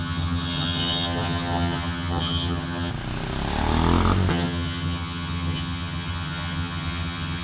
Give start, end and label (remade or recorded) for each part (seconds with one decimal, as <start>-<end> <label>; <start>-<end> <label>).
0.0-2.9 remade; 2.9-4.3 recorded; 4.3-7.4 remade